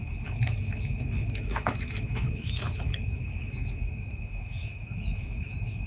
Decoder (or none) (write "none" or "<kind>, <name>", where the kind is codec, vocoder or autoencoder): autoencoder, DAC-VAE